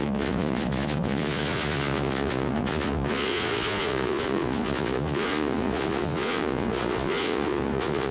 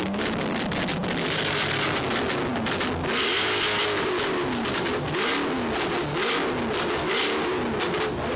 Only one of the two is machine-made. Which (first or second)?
first